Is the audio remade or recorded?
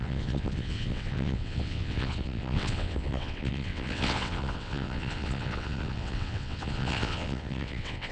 remade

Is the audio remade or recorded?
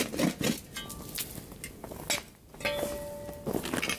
recorded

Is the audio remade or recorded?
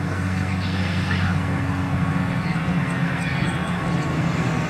remade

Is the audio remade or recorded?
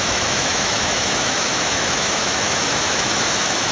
remade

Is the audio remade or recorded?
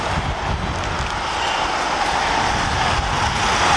recorded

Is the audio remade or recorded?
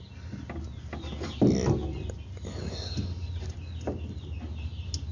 recorded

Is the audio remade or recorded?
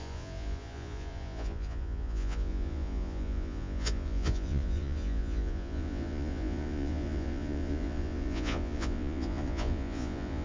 remade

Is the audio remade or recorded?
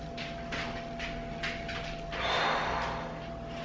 recorded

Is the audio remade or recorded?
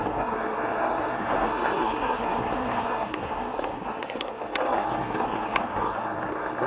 remade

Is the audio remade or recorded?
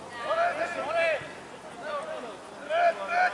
recorded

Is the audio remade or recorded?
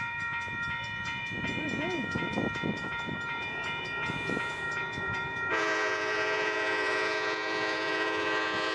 remade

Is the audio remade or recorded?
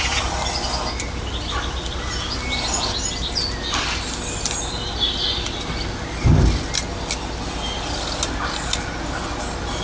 recorded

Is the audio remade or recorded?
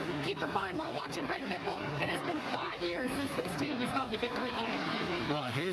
remade